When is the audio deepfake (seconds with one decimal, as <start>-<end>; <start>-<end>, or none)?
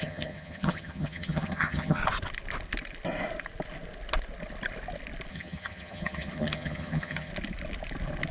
0.0-2.0; 5.3-7.3